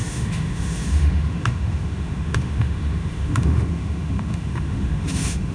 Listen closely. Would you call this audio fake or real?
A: fake